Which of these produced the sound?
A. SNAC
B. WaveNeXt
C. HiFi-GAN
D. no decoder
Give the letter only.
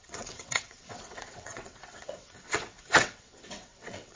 B